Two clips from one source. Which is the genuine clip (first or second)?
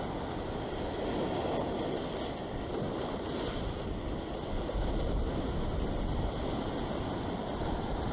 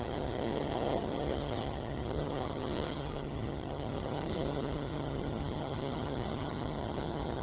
first